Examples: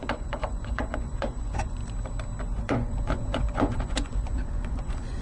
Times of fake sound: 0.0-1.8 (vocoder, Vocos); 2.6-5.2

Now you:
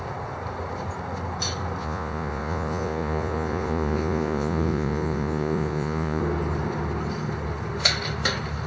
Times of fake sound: 1.8-6.2 (vocoder, Vocos)

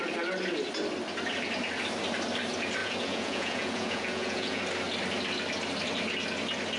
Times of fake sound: 2.8-4.6 (vocoder, Vocos)

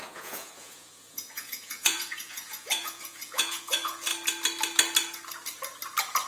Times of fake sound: 0.0-4.1 (vocoder, Vocos)

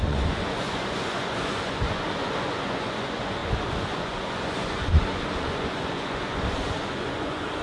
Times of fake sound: 0.0-7.6 (vocoder, Vocos)

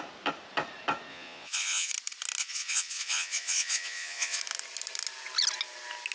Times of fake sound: 1.1-1.9 (vocoder, Vocos); 2.4-4.4